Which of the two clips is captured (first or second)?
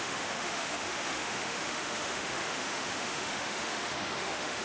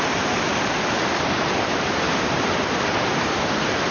second